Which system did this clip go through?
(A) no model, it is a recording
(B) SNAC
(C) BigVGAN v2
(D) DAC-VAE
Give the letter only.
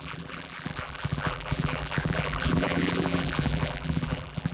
C